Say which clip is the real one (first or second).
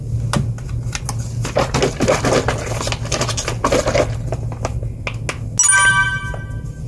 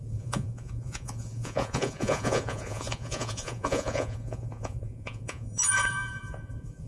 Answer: first